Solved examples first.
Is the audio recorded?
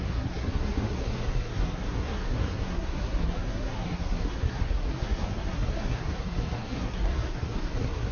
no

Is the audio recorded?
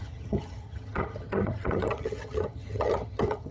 no